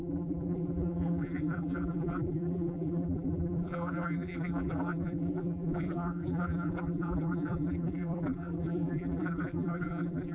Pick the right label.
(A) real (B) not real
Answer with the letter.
B